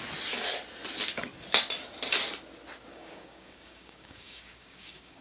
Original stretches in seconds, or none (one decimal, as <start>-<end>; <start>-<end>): 0.0-2.9